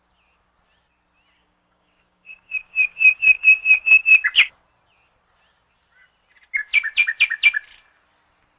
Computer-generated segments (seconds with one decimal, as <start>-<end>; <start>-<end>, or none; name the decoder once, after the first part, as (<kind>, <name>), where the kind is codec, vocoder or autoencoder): 1.4-4.0 (codec, DAC)